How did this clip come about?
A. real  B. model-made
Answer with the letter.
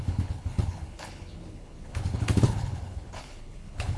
B